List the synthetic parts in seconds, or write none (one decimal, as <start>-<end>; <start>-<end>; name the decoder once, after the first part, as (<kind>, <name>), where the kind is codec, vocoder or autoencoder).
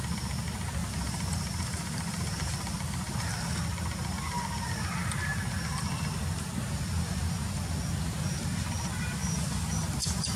0.8-3.5 (vocoder, BigVGAN v2); 9.2-10.4